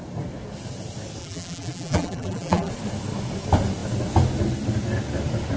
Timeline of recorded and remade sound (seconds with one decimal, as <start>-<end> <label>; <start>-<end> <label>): 0.0-1.2 recorded; 1.2-2.7 remade; 2.7-5.6 recorded